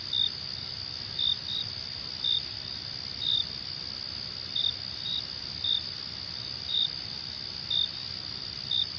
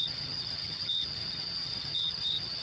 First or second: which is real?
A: first